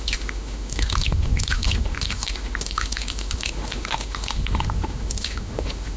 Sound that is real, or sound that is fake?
fake